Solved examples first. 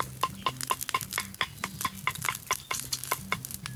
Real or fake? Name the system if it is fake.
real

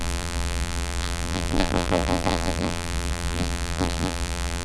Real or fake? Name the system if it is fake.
fake, vocoder, BigVGAN v2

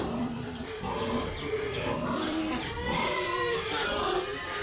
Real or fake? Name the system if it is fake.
fake, vocoder, BigVGAN v2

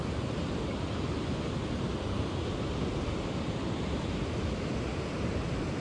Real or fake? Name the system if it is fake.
real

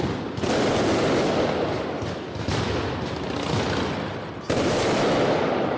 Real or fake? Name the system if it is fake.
real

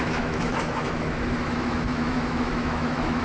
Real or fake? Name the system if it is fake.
fake, autoencoder, DAC-VAE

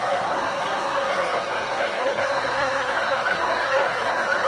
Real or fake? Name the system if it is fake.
fake, codec, SNAC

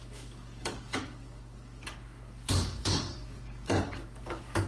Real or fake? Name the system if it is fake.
fake, codec, DAC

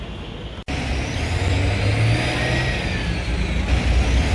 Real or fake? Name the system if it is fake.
real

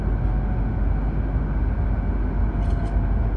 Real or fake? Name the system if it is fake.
real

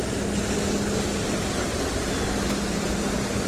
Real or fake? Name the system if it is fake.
real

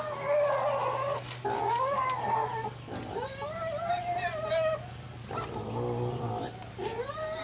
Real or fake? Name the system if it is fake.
real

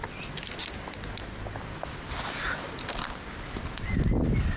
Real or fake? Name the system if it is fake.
real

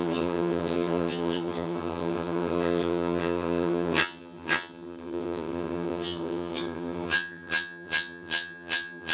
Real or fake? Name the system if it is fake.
fake, vocoder, HiFi-GAN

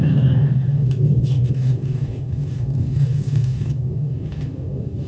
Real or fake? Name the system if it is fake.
fake, codec, DAC